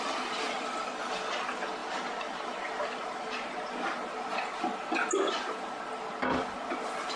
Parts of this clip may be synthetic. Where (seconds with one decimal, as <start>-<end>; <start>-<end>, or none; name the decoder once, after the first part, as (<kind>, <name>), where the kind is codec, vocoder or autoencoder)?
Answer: none